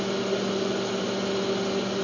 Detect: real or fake real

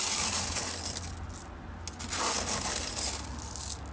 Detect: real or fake real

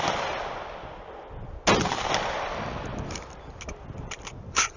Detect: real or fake real